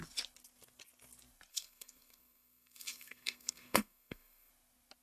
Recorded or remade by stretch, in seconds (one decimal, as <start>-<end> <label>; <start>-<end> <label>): 0.0-1.5 recorded; 1.5-4.5 remade; 4.5-5.0 recorded